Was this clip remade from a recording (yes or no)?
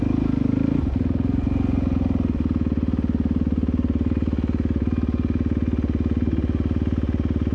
no